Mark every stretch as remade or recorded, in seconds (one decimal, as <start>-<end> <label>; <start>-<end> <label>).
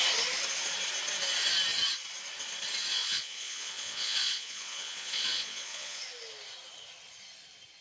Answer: 0.0-2.9 recorded; 2.9-6.0 remade; 6.0-7.8 recorded